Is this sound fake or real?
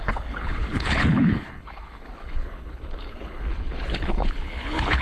fake